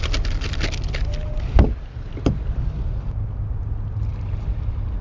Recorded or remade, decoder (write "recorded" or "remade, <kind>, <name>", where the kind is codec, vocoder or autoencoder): recorded